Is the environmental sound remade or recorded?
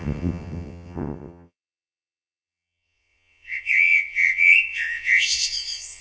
remade